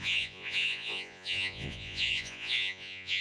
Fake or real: fake